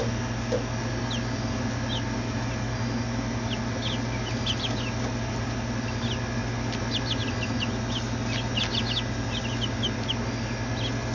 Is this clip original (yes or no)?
yes